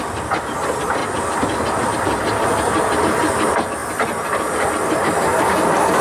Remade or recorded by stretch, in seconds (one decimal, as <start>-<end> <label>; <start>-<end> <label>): 0.0-6.0 recorded